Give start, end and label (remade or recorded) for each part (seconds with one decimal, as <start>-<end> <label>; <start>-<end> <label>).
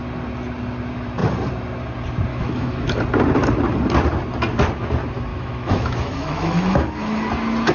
0.0-2.3 recorded; 2.3-3.0 remade; 3.0-5.3 recorded; 5.3-7.3 remade; 7.3-7.7 recorded